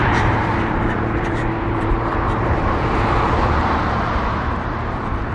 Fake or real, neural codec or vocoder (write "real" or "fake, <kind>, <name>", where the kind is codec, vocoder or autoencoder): fake, vocoder, BigVGAN v2